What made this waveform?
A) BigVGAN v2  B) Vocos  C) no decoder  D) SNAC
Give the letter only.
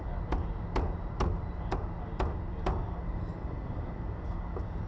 C